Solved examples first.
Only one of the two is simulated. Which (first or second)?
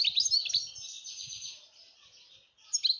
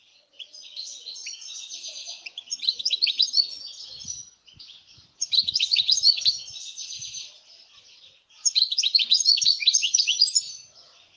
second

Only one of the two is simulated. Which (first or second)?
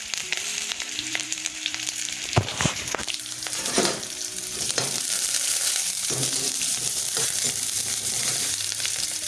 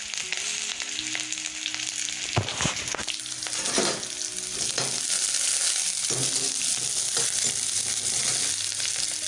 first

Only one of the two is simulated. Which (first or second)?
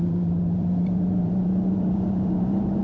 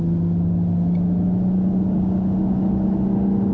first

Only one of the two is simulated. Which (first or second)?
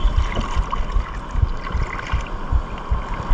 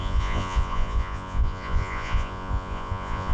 second